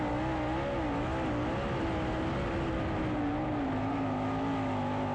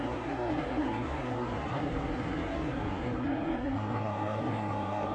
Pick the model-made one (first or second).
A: second